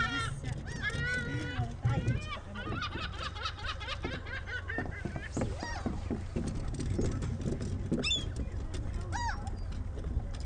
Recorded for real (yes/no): yes